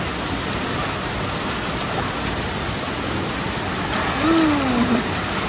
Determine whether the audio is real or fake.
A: real